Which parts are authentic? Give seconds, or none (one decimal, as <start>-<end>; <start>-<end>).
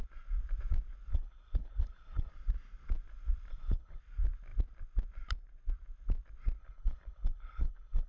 0.0-1.1; 2.3-3.5; 4.0-6.6